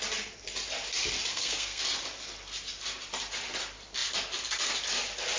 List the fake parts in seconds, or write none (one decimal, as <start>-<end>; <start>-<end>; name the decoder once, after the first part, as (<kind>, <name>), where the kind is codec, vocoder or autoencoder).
1.3-1.8 (codec, SNAC)